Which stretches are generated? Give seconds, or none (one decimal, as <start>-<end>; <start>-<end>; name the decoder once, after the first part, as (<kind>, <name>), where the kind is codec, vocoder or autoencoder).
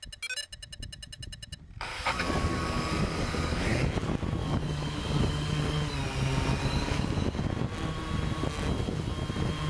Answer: 1.9-3.9 (codec, DAC); 4.4-5.9; 6.6-7.4